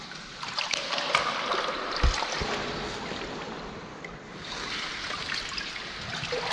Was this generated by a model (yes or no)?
no